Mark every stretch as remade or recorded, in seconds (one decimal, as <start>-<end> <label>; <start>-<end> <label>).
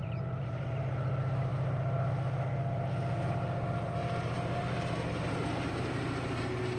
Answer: 0.0-0.8 remade; 0.8-4.0 recorded; 4.0-5.9 remade; 5.9-6.8 recorded